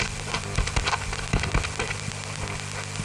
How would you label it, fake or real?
real